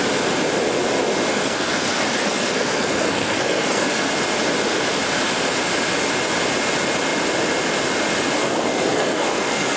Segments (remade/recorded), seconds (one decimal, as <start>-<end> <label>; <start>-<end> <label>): 0.0-1.3 recorded; 1.3-4.1 remade; 4.1-8.4 recorded; 8.4-9.8 remade